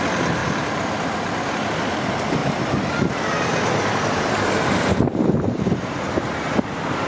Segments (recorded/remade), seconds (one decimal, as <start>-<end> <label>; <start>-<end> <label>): 0.0-3.5 recorded; 3.5-7.1 remade